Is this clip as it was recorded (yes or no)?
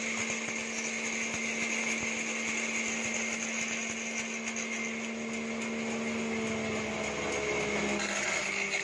yes